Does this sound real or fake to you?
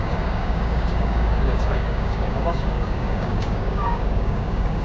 fake